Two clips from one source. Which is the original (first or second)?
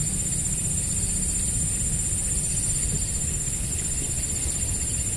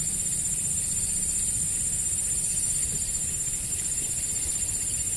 first